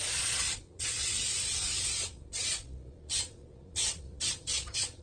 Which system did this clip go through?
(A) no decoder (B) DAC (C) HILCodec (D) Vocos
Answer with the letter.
D